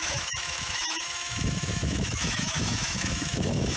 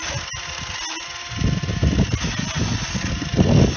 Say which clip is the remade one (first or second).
first